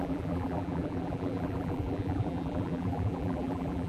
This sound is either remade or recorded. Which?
remade